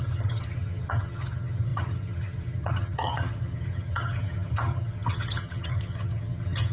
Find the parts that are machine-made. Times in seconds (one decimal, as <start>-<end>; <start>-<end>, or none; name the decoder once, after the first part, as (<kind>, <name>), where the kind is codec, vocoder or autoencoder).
0.0-6.7 (vocoder, HiFi-GAN)